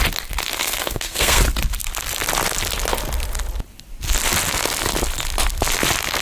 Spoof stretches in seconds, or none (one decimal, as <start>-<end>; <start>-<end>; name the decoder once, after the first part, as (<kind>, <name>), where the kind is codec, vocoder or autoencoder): 0.6-1.4 (codec, SNAC)